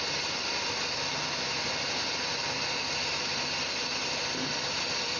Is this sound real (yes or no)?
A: yes